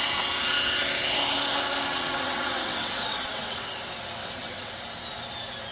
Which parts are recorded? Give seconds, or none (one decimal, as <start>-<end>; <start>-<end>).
0.0-1.9; 3.7-4.2; 4.7-5.7